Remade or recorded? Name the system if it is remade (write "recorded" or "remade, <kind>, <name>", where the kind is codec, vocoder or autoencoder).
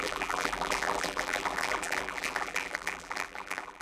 remade, vocoder, BigVGAN v2